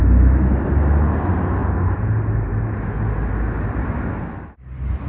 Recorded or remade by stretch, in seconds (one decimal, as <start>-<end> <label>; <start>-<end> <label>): 0.0-5.1 recorded